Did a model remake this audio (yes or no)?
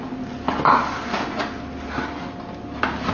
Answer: no